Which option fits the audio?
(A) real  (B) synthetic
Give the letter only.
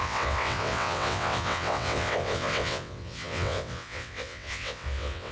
B